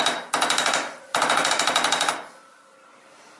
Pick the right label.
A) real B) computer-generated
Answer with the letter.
A